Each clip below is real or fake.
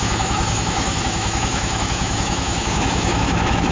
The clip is fake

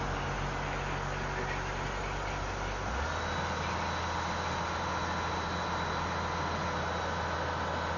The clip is real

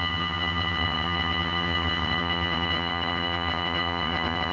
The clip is fake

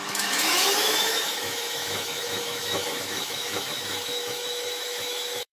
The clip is fake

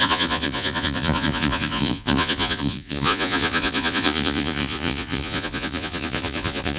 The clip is fake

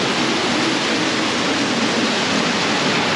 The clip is real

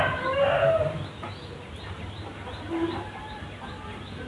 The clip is real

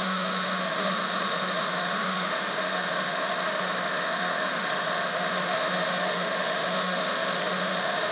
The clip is fake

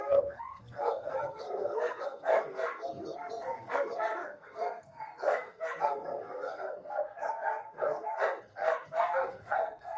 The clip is fake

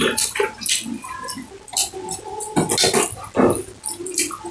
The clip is real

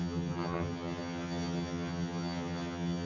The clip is fake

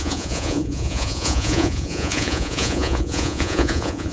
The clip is fake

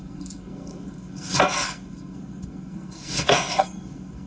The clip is fake